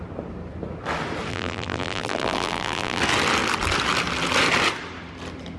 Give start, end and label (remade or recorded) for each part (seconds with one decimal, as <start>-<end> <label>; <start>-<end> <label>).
0.0-1.3 recorded; 1.3-3.0 remade; 3.0-5.6 recorded